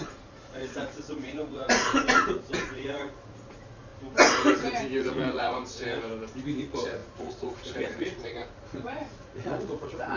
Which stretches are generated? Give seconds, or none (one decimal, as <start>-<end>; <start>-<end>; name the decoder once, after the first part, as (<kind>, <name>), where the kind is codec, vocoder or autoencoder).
0.0-3.9 (vocoder, Vocos); 5.0-5.6; 6.6-10.2